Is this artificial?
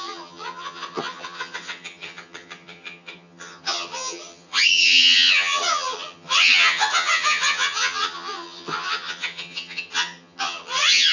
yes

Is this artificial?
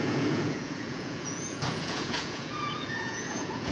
yes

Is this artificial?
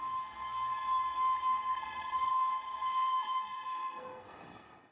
yes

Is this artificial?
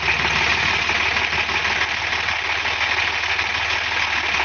no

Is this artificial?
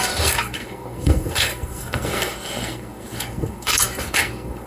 yes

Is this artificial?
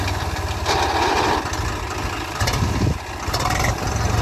no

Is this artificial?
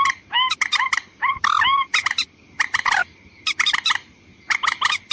no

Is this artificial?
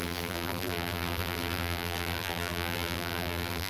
yes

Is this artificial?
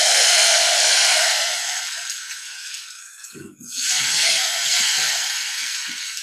yes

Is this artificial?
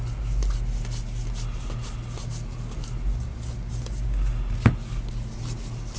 no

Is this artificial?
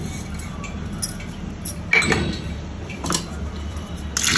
no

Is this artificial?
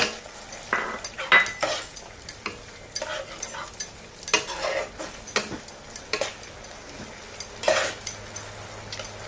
no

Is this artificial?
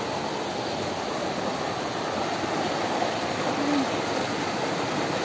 no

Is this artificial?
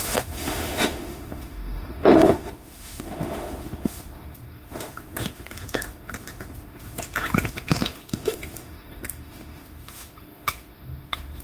yes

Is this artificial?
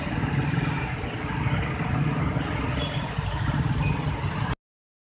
no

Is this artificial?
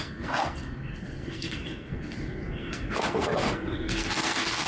yes